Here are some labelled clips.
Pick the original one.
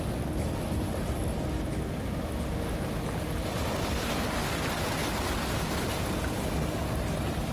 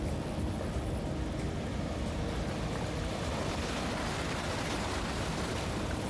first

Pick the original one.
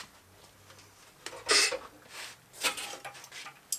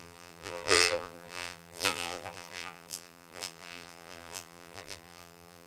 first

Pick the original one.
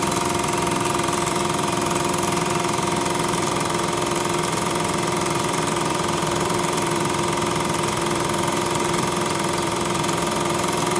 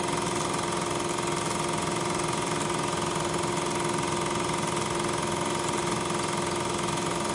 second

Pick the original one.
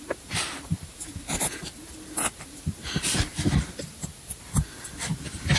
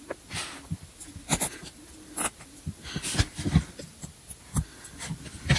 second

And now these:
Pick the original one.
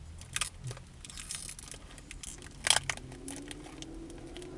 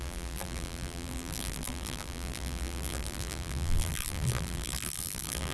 first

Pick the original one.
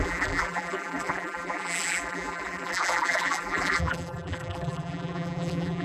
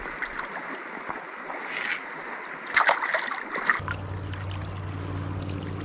second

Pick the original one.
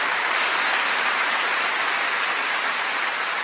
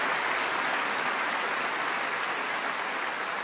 second